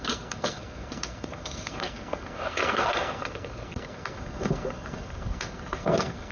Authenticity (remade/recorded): remade